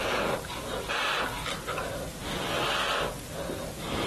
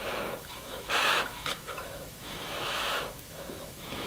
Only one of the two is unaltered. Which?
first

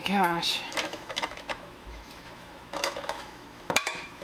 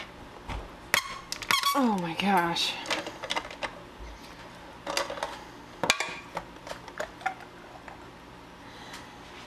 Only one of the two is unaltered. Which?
second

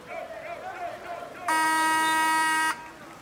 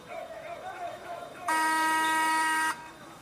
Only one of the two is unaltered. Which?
first